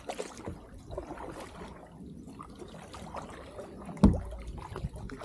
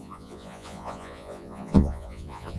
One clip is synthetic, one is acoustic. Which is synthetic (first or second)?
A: second